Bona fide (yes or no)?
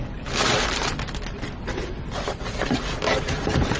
yes